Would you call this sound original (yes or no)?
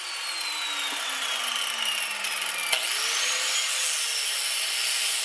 yes